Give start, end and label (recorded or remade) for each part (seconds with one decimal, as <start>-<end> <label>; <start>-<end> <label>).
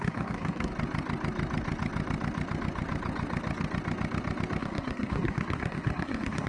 0.0-0.7 remade; 0.7-4.6 recorded; 4.6-6.5 remade